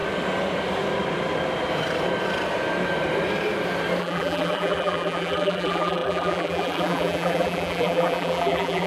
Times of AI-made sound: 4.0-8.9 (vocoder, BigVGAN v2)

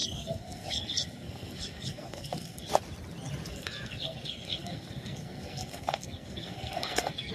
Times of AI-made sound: 0.0-2.7 (codec, SNAC); 3.5-7.3

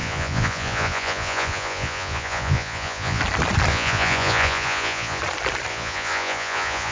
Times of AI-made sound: 0.0-3.2 (vocoder, Vocos); 3.7-5.2; 5.7-6.9

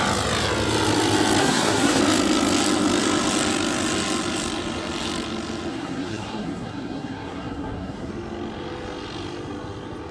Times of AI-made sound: 1.4-2.0 (codec, SNAC); 5.7-8.1

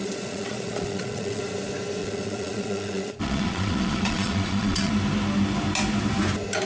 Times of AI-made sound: 0.0-1.4 (vocoder, Vocos); 2.0-4.9

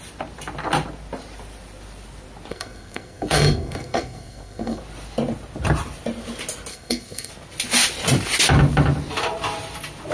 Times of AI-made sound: 2.5-4.8 (codec, SNAC); 6.7-7.3

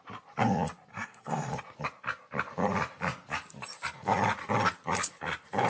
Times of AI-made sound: 0.9-1.5 (codec, SNAC)